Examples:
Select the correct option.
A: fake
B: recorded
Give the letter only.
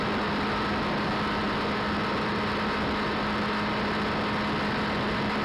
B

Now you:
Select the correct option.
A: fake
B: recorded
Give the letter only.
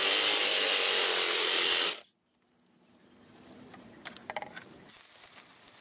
B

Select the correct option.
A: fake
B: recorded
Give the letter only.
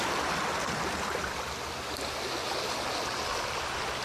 B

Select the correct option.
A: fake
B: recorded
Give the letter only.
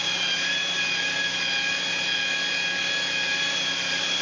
B